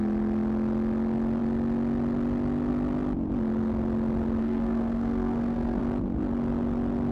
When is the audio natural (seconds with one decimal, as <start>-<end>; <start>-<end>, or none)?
0.0-4.4; 5.8-7.1